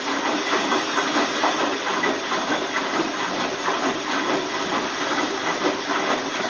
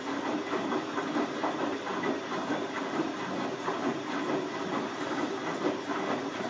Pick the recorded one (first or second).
second